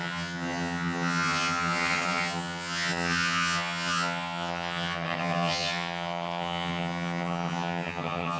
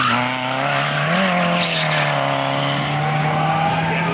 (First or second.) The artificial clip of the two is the first